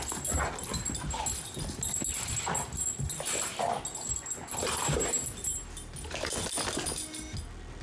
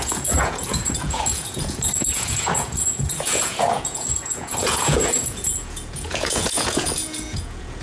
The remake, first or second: second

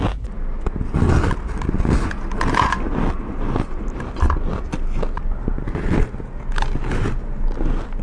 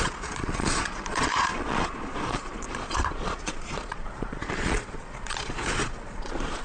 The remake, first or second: second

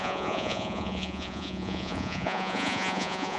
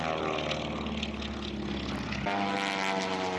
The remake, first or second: first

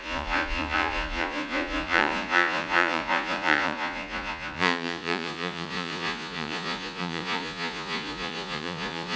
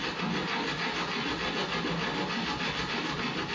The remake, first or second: first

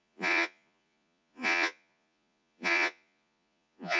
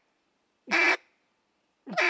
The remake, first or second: first